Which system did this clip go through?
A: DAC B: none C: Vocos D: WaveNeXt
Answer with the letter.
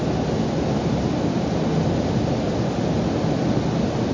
B